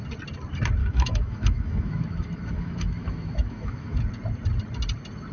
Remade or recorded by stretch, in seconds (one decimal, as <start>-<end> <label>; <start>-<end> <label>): 0.0-0.8 recorded; 0.8-4.0 remade; 4.0-5.3 recorded